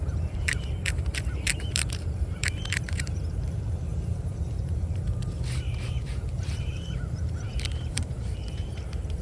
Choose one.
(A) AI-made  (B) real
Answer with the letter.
A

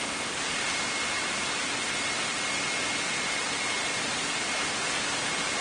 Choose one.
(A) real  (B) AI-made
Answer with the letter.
A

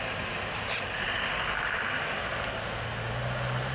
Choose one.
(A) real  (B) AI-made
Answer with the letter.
A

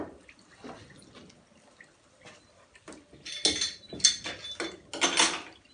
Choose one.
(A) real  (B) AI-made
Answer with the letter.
A